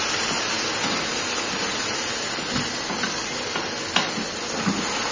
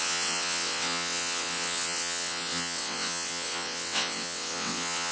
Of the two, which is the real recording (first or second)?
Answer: first